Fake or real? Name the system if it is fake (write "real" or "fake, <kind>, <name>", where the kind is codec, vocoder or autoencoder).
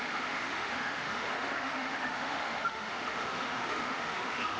fake, autoencoder, DAC-VAE